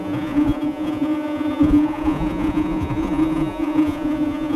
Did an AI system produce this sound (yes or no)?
yes